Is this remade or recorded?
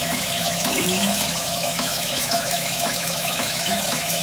remade